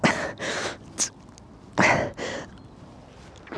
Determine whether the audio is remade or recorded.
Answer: recorded